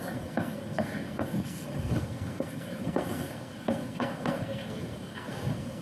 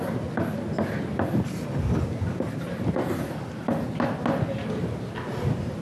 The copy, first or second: first